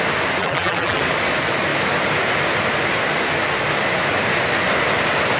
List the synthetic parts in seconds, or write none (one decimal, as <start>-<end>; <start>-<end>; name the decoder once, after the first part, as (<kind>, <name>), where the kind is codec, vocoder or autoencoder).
0.4-1.0 (vocoder, BigVGAN v2)